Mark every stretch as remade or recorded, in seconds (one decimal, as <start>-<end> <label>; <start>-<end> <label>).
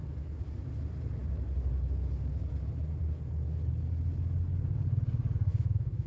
0.0-5.5 recorded; 5.5-6.1 remade